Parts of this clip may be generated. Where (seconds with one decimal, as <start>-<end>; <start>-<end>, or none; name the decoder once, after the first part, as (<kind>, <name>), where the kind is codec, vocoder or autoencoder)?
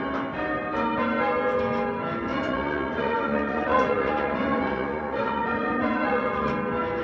2.3-6.5 (vocoder, Vocos)